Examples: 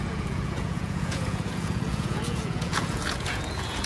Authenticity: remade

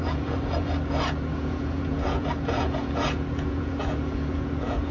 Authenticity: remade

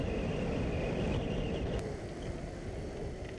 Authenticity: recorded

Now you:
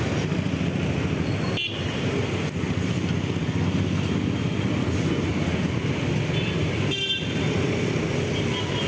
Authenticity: recorded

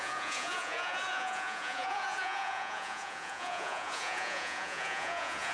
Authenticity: remade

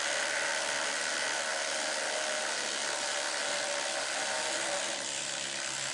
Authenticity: recorded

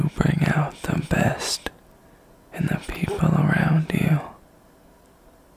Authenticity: recorded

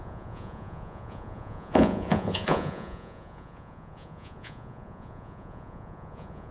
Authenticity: remade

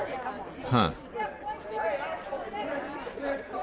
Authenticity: recorded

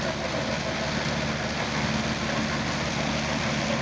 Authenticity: recorded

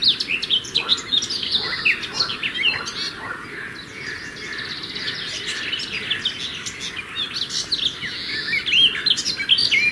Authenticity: recorded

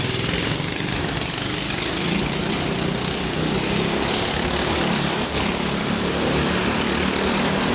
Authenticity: recorded